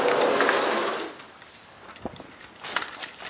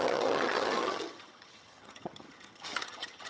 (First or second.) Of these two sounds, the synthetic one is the second